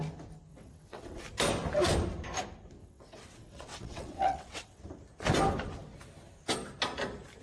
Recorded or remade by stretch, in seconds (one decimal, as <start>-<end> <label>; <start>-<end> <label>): 0.0-0.5 recorded; 0.5-1.2 remade; 1.2-2.8 recorded; 2.8-4.8 remade; 4.8-7.4 recorded